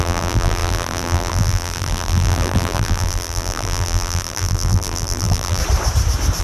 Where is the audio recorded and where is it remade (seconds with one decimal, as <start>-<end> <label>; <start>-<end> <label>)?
0.0-5.6 remade; 5.6-6.4 recorded